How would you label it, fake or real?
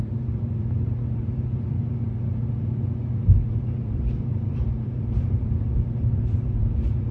fake